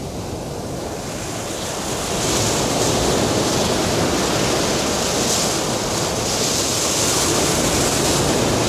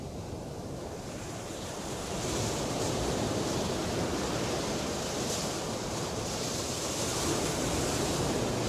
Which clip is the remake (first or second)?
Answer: second